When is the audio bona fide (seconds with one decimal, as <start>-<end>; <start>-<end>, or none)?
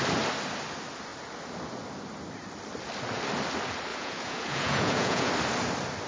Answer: 0.0-3.9; 5.3-6.1